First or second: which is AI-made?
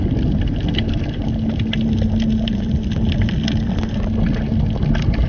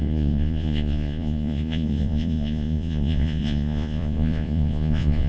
second